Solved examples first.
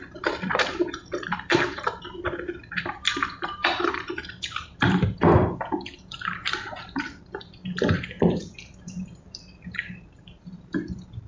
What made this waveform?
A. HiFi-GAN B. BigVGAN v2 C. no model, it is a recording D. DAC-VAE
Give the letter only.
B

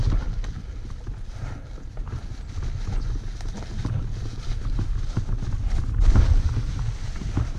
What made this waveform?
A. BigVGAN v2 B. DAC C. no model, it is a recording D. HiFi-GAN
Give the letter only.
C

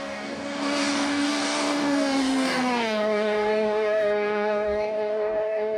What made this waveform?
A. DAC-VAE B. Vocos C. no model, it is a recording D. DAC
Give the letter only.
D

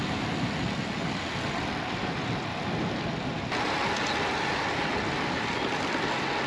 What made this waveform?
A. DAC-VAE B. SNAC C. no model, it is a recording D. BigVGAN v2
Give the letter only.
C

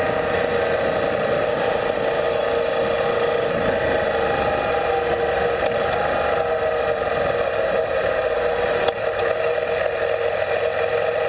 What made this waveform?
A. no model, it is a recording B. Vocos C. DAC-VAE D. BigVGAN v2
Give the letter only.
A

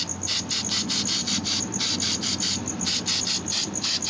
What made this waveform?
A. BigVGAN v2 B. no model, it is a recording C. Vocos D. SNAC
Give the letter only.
B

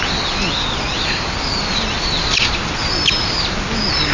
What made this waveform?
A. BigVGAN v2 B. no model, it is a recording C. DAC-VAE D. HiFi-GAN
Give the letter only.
B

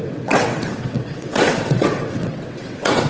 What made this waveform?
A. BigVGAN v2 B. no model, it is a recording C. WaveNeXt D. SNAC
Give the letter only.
C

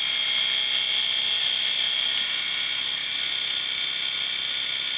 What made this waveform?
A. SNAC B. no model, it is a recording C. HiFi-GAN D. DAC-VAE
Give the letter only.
B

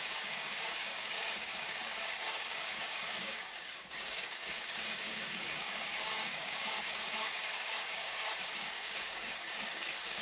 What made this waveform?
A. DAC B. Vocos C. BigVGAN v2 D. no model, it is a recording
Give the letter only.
A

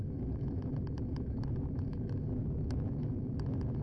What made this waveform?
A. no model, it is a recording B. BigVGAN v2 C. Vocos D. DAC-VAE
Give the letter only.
D